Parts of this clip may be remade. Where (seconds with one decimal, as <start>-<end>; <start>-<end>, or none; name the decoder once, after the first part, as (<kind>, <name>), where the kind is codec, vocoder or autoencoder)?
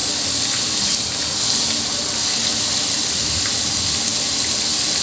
none